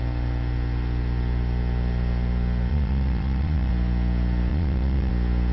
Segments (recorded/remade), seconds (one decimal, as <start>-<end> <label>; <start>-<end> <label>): 0.0-2.7 recorded; 2.7-3.7 remade; 3.7-4.5 recorded; 4.5-5.1 remade; 5.1-5.5 recorded